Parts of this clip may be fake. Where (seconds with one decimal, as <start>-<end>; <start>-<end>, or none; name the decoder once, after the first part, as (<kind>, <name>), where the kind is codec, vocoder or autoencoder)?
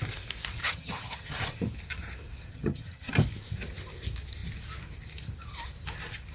0.6-1.6 (vocoder, HiFi-GAN); 2.5-3.1